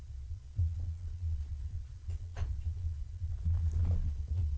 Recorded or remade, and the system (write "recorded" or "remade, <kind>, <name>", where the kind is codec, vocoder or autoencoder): remade, vocoder, Vocos